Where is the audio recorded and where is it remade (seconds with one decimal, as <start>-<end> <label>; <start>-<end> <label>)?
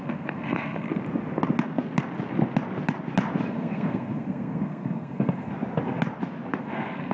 0.0-0.9 remade; 0.9-3.5 recorded; 3.5-5.5 remade; 5.5-6.6 recorded; 6.6-7.1 remade